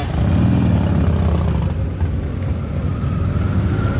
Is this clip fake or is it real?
real